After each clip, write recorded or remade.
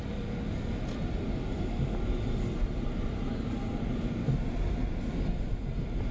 recorded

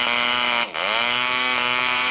remade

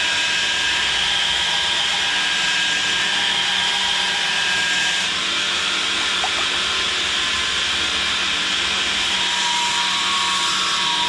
recorded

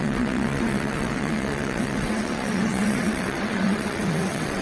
remade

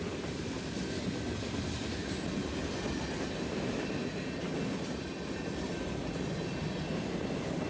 recorded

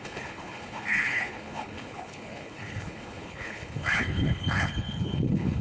remade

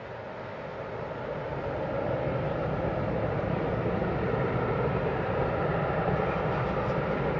recorded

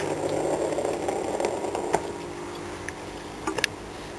recorded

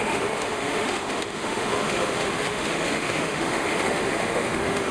remade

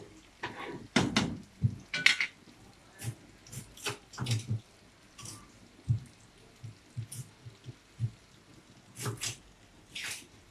recorded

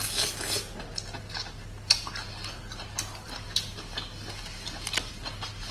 recorded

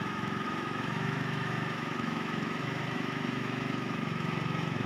remade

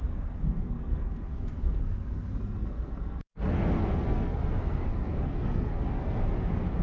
remade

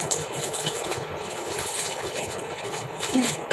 remade